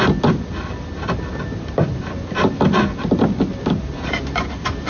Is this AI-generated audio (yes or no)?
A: no